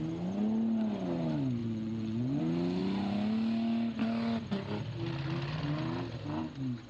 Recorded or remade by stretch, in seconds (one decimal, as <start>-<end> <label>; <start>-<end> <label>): 0.0-1.6 recorded; 1.6-2.4 remade; 2.4-6.9 recorded